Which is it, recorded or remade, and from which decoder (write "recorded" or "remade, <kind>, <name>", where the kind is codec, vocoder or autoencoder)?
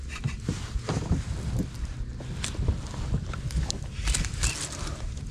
recorded